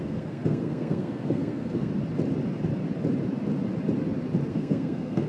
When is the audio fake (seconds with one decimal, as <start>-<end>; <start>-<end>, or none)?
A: 0.0-1.9; 4.5-5.3